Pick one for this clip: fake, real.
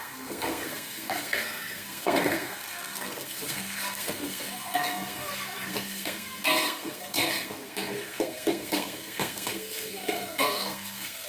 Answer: fake